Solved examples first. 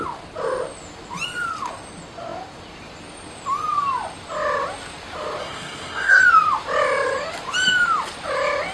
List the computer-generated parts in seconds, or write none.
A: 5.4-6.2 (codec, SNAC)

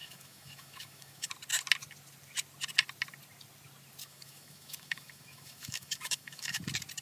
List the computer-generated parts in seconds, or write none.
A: 0.0-1.3 (autoencoder, DAC-VAE); 4.0-6.6

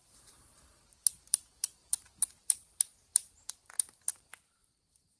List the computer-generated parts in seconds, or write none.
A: 0.0-5.2 (vocoder, BigVGAN v2)

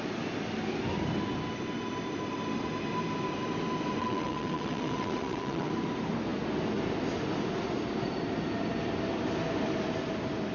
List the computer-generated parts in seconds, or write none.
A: 4.0-5.7 (vocoder, WaveNeXt)

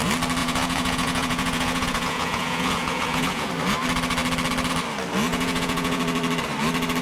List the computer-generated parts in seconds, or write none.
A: 0.4-3.5 (vocoder, Vocos); 5.3-6.0

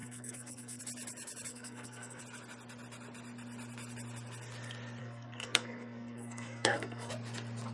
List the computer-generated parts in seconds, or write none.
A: 0.0-0.8 (codec, SNAC); 1.5-2.2; 5.0-7.1